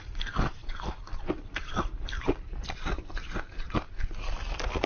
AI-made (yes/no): no